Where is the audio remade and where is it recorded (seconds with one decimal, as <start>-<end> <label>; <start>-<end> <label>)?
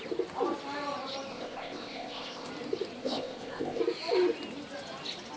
0.0-1.3 recorded; 1.3-2.5 remade; 2.5-3.0 recorded; 3.0-3.8 remade; 3.8-5.4 recorded